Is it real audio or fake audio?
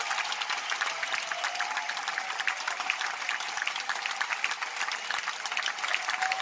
real